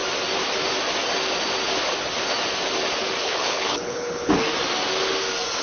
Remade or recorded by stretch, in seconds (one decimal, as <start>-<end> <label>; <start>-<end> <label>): 0.0-3.2 recorded; 3.2-4.3 remade; 4.3-5.6 recorded